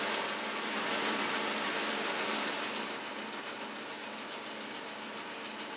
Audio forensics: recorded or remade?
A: recorded